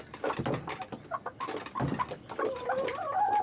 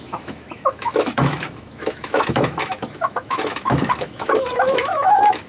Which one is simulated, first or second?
second